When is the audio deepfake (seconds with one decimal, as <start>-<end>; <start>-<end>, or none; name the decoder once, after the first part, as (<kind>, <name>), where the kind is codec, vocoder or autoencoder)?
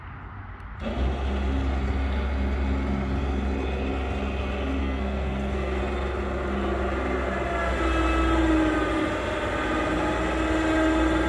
4.8-5.8 (codec, SNAC)